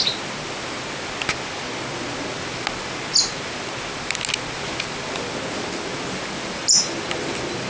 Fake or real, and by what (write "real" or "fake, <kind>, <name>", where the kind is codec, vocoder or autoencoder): real